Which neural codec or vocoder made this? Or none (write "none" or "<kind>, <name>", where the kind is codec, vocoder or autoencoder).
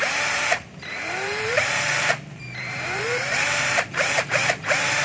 vocoder, BigVGAN v2